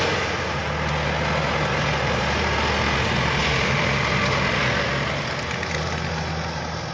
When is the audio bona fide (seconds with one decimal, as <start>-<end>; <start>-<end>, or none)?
0.0-6.9